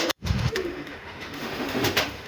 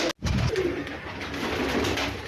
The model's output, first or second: first